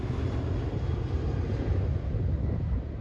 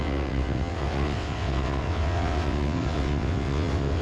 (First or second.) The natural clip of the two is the first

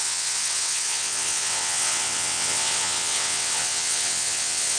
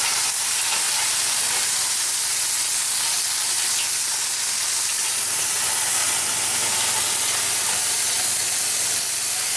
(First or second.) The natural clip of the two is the second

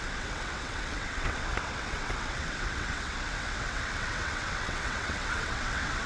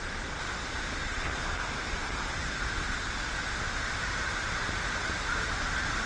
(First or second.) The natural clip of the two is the second